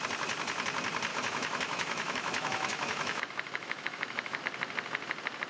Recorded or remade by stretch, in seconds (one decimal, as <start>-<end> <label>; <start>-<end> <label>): 0.0-1.1 recorded; 1.1-4.4 remade; 4.4-5.5 recorded